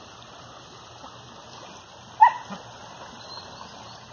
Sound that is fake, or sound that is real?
real